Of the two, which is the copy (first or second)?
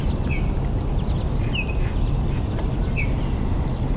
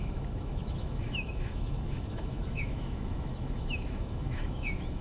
second